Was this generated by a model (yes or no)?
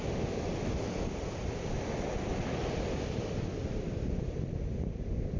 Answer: no